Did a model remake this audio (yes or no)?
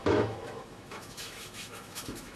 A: yes